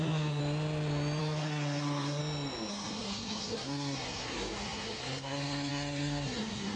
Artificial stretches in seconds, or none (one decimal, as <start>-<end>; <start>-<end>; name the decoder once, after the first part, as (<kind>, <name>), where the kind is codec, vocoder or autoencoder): 0.0-0.4 (codec, SNAC); 1.2-2.2; 2.7-6.8